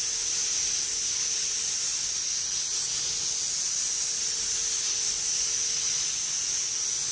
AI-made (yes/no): no